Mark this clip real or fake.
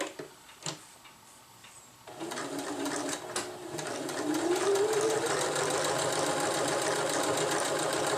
real